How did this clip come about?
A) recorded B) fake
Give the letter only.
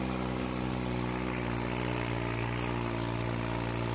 A